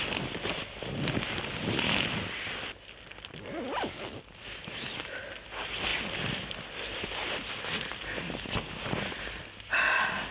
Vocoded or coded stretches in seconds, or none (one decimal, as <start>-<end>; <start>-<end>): none